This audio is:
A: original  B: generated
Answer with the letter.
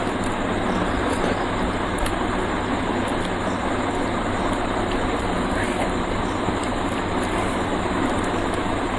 A